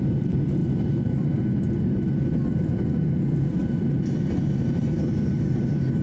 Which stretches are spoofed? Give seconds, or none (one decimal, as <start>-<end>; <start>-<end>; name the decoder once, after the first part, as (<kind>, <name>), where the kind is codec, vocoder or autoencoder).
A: none